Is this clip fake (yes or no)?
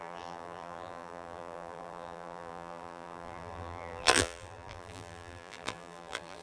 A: yes